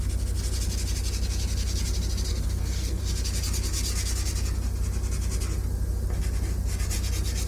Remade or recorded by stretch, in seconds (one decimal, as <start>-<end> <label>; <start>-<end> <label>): 0.0-2.3 recorded; 2.3-3.0 remade; 3.0-7.5 recorded